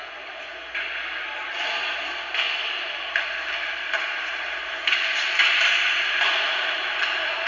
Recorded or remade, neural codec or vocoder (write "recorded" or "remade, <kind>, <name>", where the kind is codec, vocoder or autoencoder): recorded